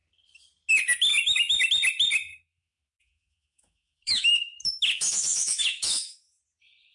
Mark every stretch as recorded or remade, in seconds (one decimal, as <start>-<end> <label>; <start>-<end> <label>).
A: 0.0-1.1 recorded; 1.1-1.7 remade; 1.7-2.3 recorded; 2.3-6.4 remade; 6.4-6.9 recorded